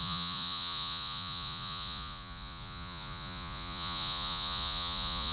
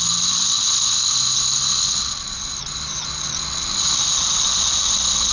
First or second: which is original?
second